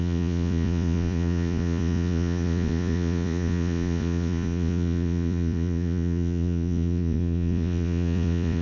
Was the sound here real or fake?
fake